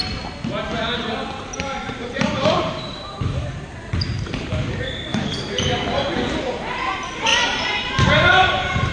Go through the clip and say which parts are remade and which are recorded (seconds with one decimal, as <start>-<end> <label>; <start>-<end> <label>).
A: 0.0-1.5 recorded; 1.5-4.4 remade; 4.4-5.1 recorded; 5.1-5.7 remade; 5.7-7.3 recorded; 7.3-8.9 remade